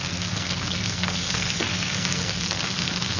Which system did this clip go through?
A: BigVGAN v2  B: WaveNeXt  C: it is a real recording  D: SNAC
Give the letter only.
D